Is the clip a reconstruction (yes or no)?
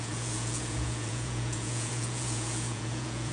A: yes